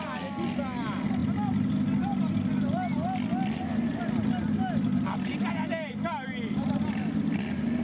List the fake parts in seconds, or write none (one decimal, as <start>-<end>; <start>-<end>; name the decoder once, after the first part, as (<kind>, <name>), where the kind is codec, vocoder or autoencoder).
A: none